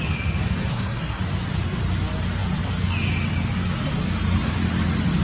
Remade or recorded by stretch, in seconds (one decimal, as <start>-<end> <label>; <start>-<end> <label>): 0.0-0.7 recorded; 0.7-1.2 remade; 1.2-5.2 recorded